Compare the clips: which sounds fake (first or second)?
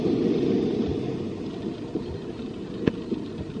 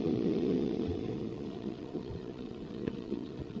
second